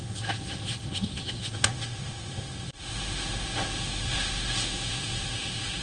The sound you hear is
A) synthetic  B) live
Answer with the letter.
A